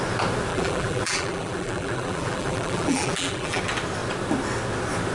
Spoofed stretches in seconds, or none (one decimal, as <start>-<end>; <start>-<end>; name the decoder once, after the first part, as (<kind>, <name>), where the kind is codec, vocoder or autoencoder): 0.5-3.6 (vocoder, BigVGAN v2)